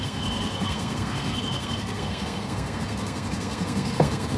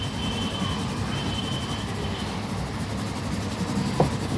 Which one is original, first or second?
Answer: second